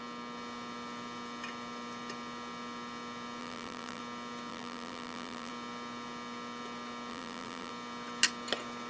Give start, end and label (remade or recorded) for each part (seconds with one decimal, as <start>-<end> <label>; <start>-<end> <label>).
0.0-3.4 recorded; 3.4-4.0 remade; 4.0-4.5 recorded; 4.5-5.5 remade; 5.5-7.1 recorded; 7.1-7.7 remade; 7.7-8.9 recorded